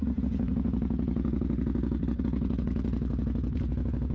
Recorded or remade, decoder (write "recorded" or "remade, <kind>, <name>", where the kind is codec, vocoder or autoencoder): remade, vocoder, Vocos